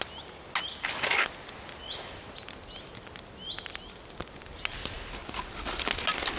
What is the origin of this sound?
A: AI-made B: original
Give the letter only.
B